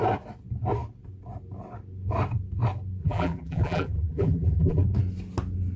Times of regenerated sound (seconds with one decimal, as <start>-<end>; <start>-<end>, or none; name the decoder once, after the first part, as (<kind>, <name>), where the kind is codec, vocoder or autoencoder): 3.0-4.8 (vocoder, BigVGAN v2)